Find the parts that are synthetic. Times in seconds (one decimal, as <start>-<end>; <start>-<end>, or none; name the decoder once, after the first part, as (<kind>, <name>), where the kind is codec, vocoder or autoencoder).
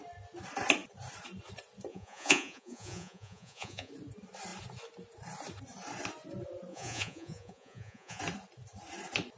1.9-3.9 (vocoder, Vocos); 6.7-8.2